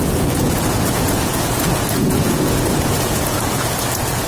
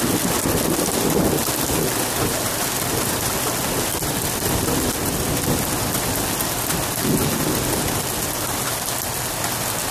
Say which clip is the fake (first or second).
first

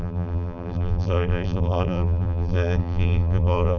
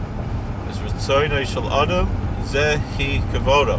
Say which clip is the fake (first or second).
first